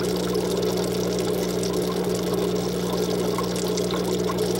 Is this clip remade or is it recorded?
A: recorded